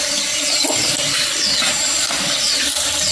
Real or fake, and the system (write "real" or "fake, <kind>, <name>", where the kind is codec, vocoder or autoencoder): real